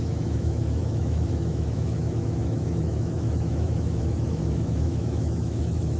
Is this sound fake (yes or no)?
yes